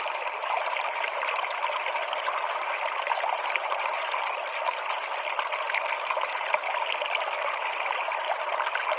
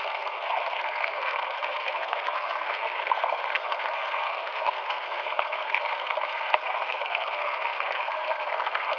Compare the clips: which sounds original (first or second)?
first